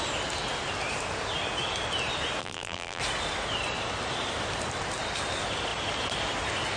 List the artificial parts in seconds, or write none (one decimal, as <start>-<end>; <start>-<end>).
2.4-3.0